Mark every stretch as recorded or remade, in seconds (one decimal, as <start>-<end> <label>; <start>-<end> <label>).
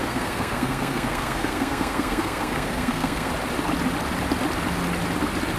0.0-3.3 remade; 3.3-5.6 recorded